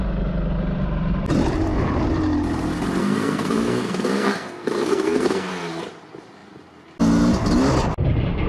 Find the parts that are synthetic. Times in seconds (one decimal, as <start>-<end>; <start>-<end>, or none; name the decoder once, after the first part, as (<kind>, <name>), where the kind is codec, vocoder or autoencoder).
3.0-5.5 (codec, SNAC)